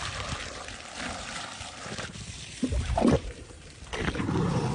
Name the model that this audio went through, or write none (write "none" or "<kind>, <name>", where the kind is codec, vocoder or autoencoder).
vocoder, BigVGAN v2